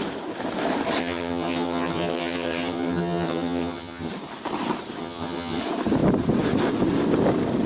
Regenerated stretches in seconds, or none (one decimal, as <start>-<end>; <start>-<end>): 1.0-4.1; 5.0-5.6